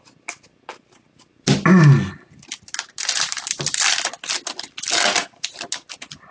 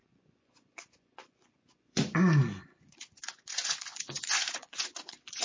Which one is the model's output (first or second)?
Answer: second